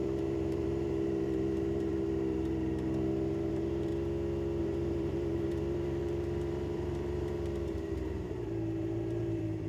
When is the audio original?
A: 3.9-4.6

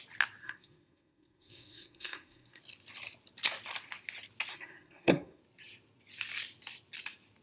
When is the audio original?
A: 0.0-0.4; 2.6-4.5; 5.4-7.4

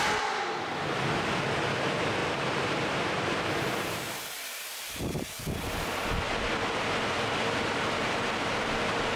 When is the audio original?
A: 0.0-2.2; 5.4-9.2

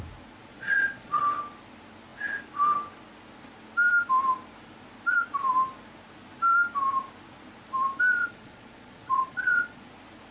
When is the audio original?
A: 0.0-0.5; 1.2-8.2; 9.9-10.3

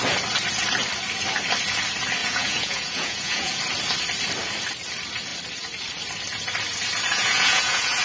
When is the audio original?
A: 0.0-2.2; 3.6-7.1